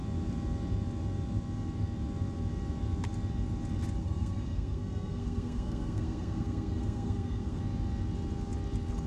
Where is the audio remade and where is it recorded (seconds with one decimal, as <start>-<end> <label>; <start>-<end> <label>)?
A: 0.0-4.0 recorded; 4.0-7.6 remade; 7.6-9.1 recorded